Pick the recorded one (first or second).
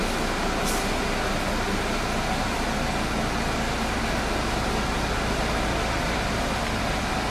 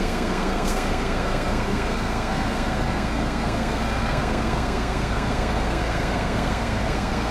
first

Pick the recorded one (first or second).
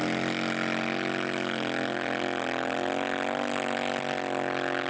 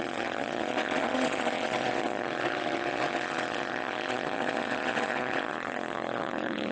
first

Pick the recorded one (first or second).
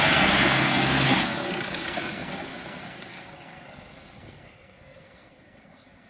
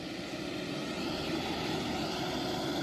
second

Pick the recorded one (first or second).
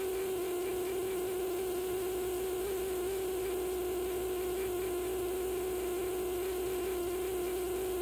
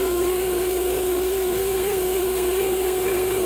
first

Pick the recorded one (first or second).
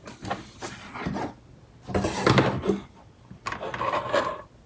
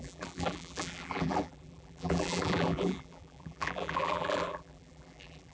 first